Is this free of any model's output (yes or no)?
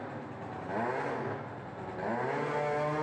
yes